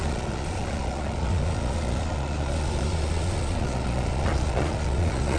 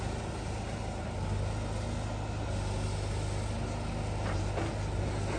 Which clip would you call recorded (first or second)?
second